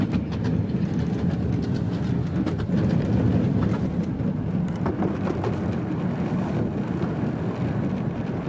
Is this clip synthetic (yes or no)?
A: no